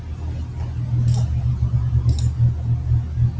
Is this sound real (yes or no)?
yes